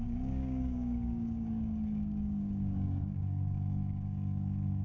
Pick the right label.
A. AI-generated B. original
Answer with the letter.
A